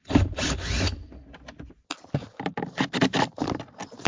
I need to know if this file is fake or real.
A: real